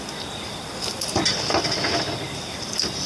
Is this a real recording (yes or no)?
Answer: no